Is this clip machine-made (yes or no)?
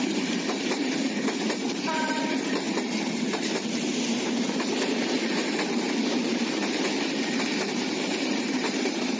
yes